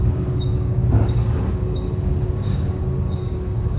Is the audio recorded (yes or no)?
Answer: no